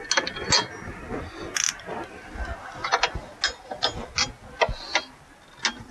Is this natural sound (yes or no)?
yes